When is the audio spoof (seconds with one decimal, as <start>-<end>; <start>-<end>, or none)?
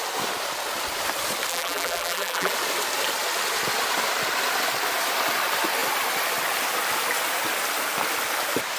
1.5-2.5